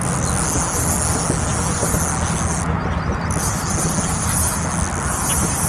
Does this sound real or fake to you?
real